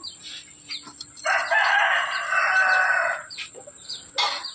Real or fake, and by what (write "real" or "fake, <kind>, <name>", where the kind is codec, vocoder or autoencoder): real